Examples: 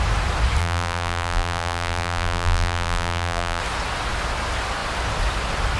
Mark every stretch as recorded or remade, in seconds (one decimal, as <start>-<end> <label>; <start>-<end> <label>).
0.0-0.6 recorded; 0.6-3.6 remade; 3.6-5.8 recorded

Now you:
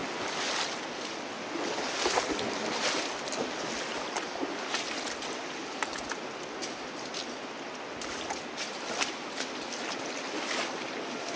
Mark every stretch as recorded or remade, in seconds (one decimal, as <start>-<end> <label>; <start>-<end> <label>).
0.0-11.4 recorded

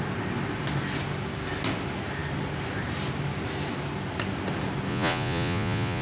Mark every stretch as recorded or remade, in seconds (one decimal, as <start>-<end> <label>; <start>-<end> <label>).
0.0-4.9 recorded; 4.9-6.0 remade